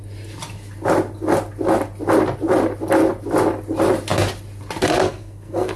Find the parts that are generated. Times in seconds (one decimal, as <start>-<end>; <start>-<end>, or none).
5.0-5.8